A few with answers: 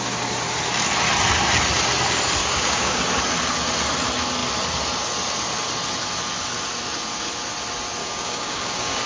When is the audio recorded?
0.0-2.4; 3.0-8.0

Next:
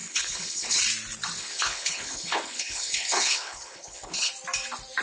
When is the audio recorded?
0.8-1.4; 4.3-5.0

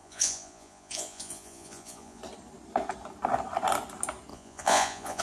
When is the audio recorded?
2.2-4.3